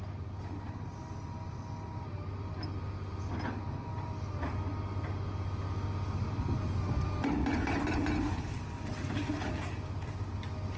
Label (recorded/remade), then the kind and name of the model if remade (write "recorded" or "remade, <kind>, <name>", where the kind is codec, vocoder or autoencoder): recorded